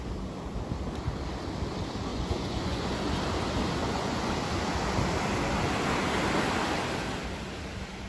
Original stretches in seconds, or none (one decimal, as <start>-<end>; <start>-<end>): 0.0-2.1; 3.2-3.8; 4.3-8.1